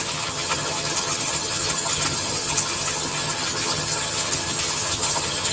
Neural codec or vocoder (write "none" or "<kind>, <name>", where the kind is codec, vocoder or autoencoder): vocoder, HiFi-GAN